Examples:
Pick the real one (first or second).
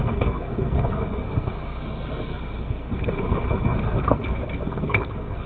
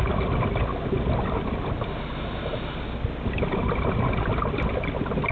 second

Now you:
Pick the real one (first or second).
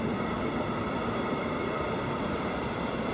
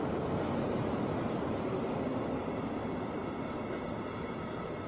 second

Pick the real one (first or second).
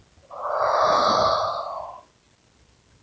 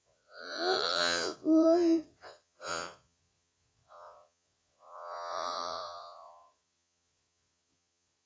first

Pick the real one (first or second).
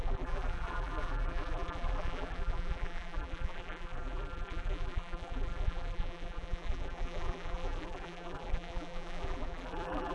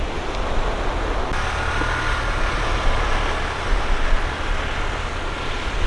second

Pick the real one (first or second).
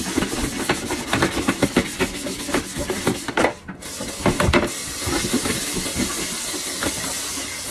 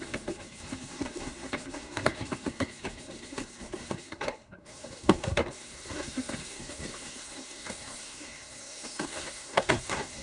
first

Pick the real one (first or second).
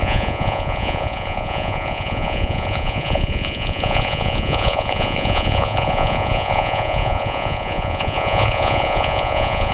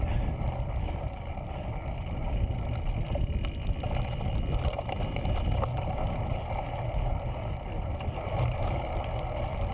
second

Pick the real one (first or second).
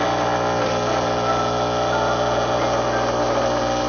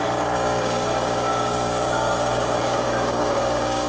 first